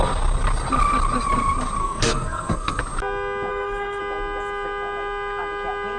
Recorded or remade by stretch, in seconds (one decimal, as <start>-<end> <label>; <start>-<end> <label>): 0.0-1.8 recorded; 1.8-2.8 remade; 2.8-3.5 recorded; 3.5-4.0 remade; 4.0-6.0 recorded